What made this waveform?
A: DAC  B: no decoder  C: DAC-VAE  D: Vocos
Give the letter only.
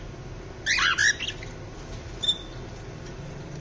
B